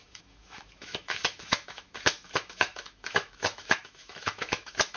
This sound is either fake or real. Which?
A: fake